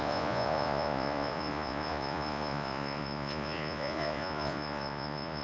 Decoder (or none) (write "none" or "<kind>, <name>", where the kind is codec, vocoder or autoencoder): vocoder, Vocos